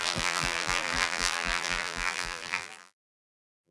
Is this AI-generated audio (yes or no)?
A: yes